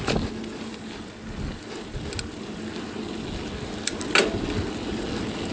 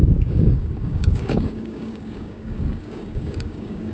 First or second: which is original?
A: first